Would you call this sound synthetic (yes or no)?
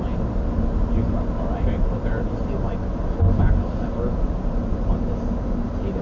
no